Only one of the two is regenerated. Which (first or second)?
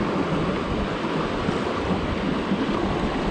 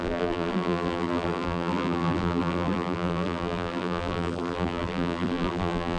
second